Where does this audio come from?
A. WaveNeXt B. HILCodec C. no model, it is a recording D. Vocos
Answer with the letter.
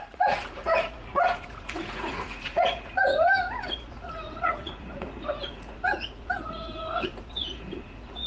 D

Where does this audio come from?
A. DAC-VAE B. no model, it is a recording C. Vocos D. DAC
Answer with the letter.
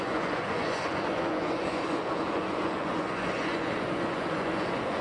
C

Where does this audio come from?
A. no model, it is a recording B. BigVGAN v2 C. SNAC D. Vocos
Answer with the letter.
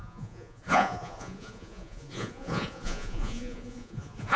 D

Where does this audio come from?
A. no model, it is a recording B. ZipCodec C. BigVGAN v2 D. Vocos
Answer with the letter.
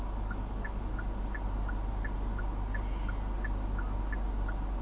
A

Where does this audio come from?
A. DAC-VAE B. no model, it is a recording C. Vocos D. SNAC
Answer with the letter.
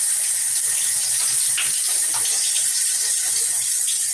B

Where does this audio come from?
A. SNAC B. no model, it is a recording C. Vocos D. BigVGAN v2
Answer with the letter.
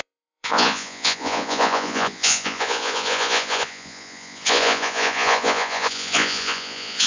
C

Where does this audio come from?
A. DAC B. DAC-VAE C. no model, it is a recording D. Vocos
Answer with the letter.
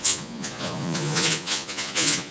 D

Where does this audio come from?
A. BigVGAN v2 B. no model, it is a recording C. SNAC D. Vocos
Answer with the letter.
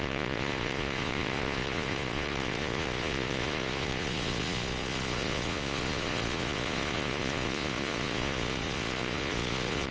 D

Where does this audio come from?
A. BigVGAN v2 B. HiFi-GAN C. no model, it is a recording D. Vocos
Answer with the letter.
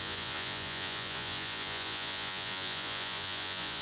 D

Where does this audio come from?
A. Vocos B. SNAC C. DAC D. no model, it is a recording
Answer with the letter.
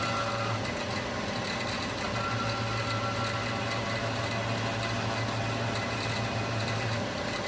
D